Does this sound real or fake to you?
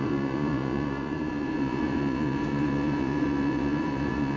fake